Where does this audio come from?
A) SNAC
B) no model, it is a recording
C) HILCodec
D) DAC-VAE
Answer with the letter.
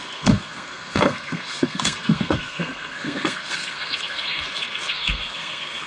A